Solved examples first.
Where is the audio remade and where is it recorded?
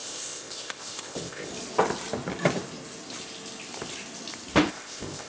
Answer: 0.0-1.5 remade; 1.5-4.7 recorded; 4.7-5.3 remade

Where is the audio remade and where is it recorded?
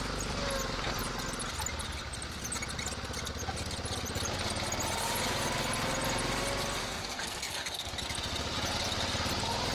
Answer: 0.0-6.8 recorded; 6.8-7.9 remade; 7.9-9.7 recorded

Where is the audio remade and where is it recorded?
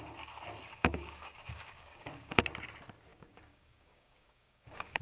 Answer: 0.0-0.7 recorded; 0.7-2.4 remade; 2.4-3.1 recorded; 3.1-5.0 remade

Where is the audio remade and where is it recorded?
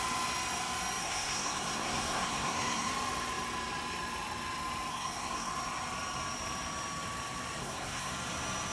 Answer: 0.0-1.0 recorded; 1.0-2.9 remade; 2.9-4.9 recorded; 4.9-5.5 remade; 5.5-7.6 recorded; 7.6-8.1 remade; 8.1-8.7 recorded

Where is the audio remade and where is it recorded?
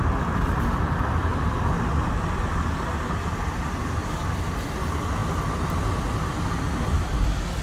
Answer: 0.0-7.6 recorded